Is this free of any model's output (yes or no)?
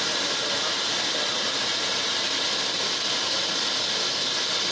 yes